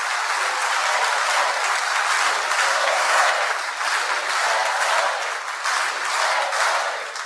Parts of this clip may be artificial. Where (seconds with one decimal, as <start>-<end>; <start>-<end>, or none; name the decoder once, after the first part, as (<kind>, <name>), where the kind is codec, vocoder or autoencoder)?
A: 2.7-3.3 (codec, SNAC)